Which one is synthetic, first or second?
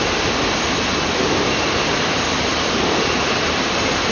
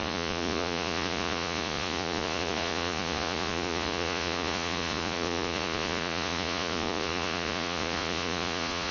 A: second